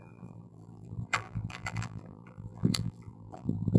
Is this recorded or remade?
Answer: remade